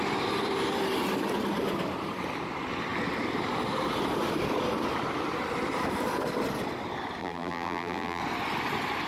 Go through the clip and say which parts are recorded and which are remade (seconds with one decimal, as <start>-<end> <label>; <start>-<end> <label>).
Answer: 0.0-7.2 recorded; 7.2-8.2 remade; 8.2-9.1 recorded

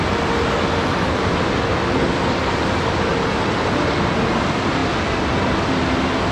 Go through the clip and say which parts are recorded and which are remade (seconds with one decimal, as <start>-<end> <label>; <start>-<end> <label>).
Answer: 0.0-6.3 recorded

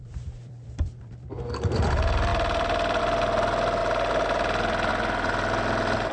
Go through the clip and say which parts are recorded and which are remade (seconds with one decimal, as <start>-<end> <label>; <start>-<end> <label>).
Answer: 0.0-1.4 remade; 1.4-2.3 recorded; 2.3-3.0 remade; 3.0-3.8 recorded; 3.8-4.9 remade; 4.9-6.1 recorded